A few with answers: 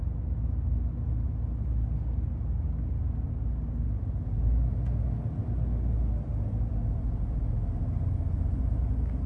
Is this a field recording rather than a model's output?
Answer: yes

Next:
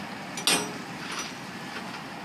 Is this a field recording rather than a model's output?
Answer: yes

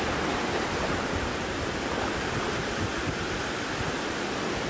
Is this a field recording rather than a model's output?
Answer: yes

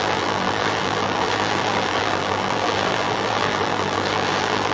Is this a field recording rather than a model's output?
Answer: no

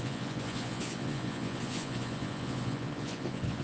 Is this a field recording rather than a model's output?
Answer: no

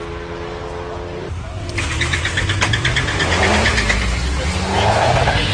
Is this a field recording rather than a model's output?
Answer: yes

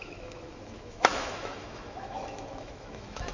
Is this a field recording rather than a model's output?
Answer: no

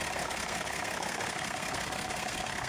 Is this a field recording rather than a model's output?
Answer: no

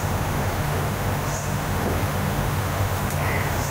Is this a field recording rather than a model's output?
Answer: no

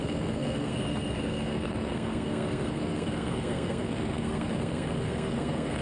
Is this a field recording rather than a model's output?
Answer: no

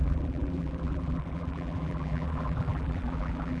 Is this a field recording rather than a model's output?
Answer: no